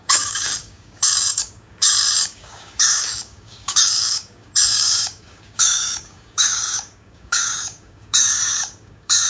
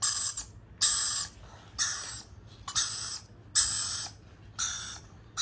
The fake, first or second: first